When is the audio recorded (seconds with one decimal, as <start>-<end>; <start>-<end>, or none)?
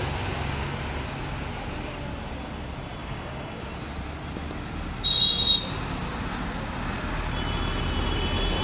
0.0-3.0; 3.6-8.6